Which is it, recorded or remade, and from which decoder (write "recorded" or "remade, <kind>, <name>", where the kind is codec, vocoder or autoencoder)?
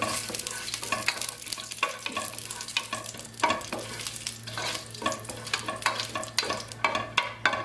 recorded